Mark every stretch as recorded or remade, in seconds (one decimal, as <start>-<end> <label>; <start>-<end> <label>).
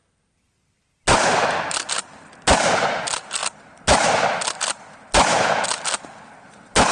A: 0.0-6.9 recorded